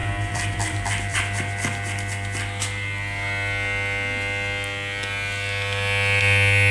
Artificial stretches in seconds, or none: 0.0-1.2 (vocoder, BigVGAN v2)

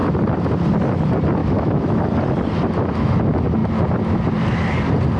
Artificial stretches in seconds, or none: 1.4-2.0 (autoencoder, DAC-VAE)

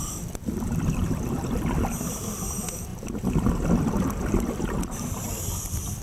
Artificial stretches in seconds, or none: none

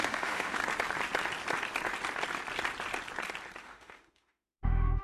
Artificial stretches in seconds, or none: 0.0-0.6 (autoencoder, DAC-VAE); 3.6-5.0

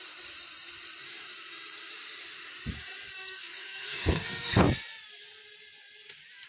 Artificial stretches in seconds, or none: 3.2-4.6 (codec, SNAC)

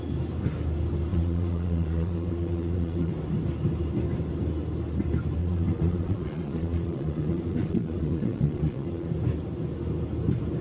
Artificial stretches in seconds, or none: 1.1-3.1 (vocoder, Vocos); 5.4-9.1